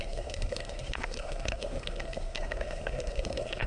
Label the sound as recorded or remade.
remade